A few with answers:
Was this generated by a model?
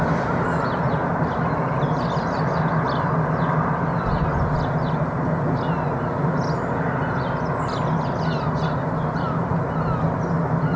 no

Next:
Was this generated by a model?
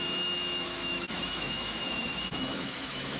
yes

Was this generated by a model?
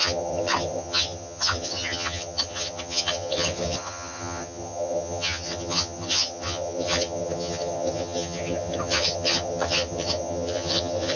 yes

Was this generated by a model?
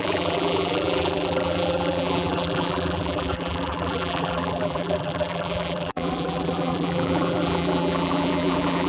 yes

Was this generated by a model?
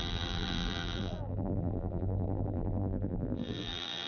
yes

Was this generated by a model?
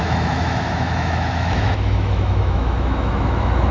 yes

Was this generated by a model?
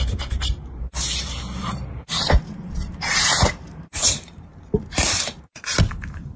yes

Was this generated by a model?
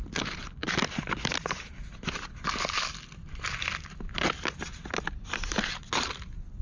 no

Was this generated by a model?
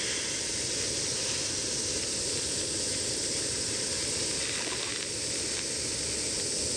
no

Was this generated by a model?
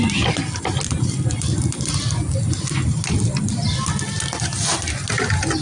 no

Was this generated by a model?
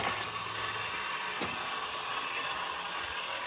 no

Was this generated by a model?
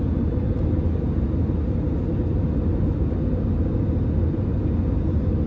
no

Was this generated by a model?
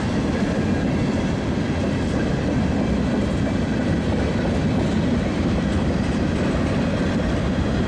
no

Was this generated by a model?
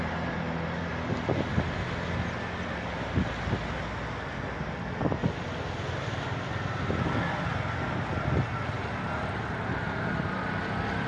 no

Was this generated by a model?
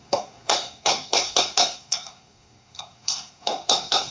yes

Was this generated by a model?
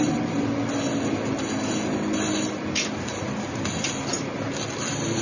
no